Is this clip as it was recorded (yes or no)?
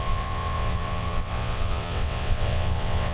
no